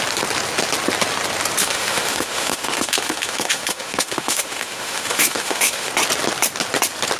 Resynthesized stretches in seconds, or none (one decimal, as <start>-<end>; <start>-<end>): 1.6-5.9